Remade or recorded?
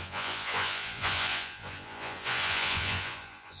remade